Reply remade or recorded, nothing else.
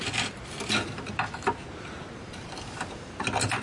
recorded